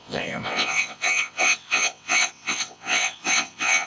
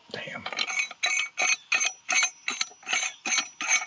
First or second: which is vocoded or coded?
first